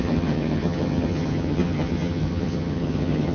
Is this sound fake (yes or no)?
yes